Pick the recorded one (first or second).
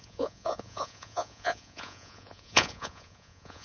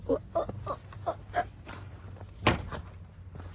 second